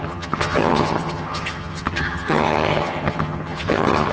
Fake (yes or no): yes